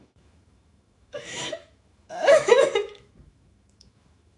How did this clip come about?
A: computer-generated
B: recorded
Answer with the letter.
A